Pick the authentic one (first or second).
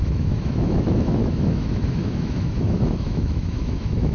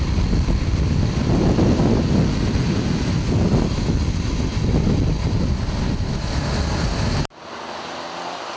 second